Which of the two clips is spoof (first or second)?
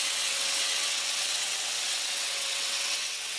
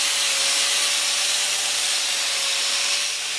first